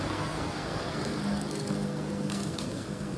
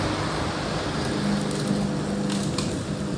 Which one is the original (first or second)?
second